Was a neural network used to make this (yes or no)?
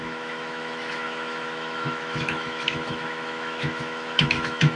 yes